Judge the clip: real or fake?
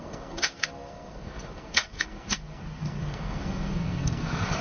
fake